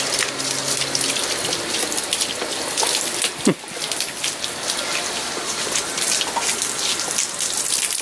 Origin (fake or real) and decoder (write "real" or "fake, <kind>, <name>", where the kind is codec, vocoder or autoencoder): real